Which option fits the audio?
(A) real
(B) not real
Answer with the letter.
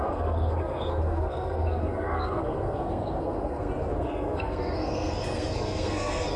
B